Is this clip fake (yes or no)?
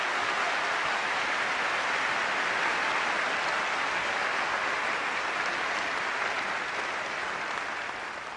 no